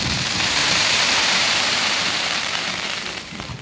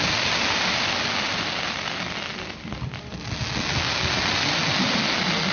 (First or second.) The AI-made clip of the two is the first